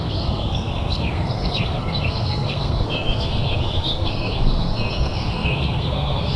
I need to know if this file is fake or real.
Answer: fake